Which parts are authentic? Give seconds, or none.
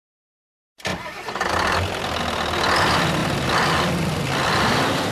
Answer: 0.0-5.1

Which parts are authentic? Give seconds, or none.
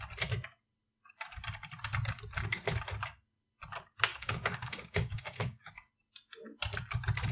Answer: 0.0-4.1; 5.7-7.3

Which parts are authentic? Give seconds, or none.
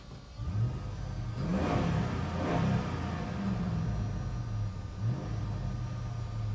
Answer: 0.0-6.5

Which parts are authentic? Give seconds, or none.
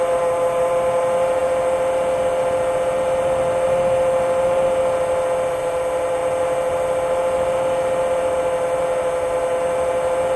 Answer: 0.0-10.4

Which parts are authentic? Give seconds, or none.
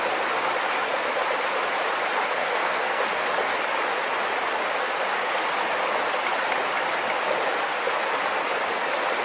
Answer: 0.0-2.4; 3.0-9.2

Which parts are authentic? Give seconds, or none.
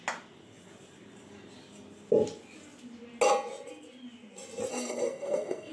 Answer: 0.0-4.7